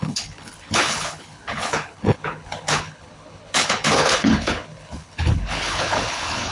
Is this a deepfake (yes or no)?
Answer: yes